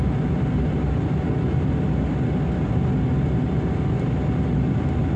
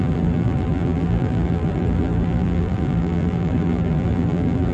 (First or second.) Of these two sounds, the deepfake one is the second